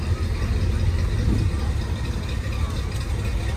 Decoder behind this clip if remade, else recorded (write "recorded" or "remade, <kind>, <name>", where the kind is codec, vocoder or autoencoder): recorded